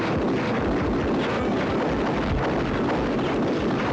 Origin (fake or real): real